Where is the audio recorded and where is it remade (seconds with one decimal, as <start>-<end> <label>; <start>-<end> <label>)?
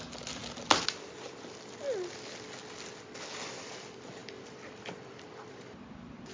0.0-4.2 recorded; 4.2-6.3 remade